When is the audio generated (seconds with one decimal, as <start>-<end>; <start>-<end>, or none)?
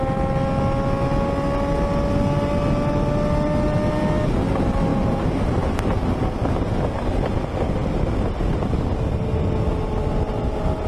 4.9-5.8